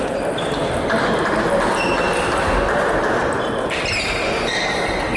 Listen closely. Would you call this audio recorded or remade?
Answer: recorded